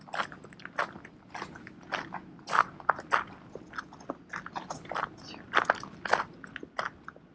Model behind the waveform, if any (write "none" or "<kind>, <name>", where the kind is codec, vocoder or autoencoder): none